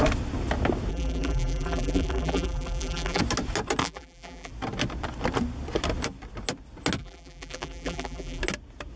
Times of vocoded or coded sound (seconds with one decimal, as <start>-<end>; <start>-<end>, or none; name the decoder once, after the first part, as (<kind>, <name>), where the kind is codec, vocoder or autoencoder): 0.9-3.2 (vocoder, BigVGAN v2); 3.8-4.5; 7.0-8.4